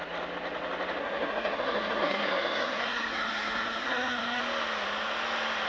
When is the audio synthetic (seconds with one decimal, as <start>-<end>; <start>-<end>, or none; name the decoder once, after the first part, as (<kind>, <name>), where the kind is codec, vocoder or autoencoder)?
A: 1.0-4.4 (codec, SNAC)